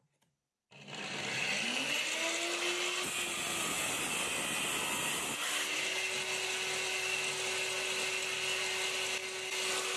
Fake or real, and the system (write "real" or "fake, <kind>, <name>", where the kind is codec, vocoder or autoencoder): real